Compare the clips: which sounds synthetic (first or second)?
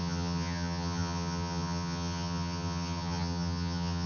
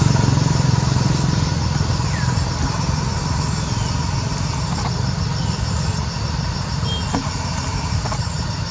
first